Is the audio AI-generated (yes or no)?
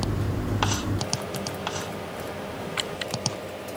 yes